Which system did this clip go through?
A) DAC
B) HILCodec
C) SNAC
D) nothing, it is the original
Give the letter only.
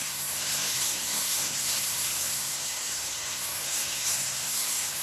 C